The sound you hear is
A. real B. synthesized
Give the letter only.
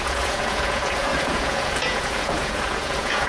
B